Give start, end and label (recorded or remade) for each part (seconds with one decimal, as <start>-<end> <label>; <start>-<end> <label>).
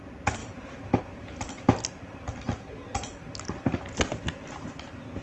0.0-0.4 recorded; 0.4-1.0 remade; 1.0-5.2 recorded